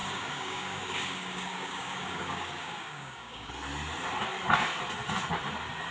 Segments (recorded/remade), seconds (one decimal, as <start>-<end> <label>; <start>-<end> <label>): 0.0-3.5 remade; 3.5-5.9 recorded